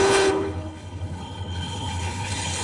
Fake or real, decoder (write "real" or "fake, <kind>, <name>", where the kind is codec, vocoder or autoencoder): fake, codec, HILCodec